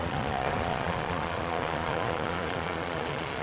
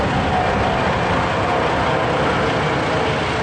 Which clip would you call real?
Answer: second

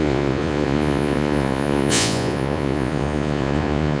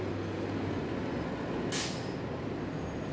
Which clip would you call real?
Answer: second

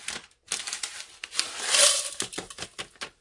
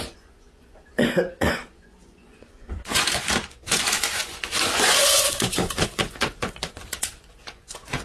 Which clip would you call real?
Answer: first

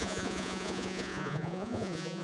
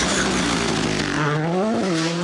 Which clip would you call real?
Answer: second